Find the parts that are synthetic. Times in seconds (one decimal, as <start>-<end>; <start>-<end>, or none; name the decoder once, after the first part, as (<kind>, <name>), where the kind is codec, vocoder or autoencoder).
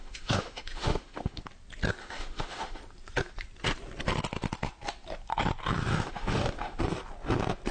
0.0-1.4 (autoencoder, DAC-VAE); 2.0-2.8; 5.9-6.8